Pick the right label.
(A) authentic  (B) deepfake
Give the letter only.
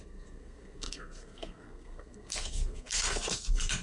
B